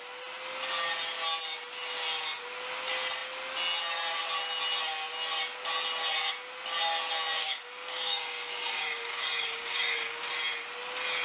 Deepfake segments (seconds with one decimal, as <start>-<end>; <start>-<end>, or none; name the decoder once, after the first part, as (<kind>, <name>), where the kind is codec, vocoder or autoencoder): 7.4-10.3 (codec, DAC)